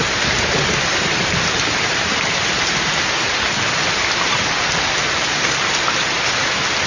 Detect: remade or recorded recorded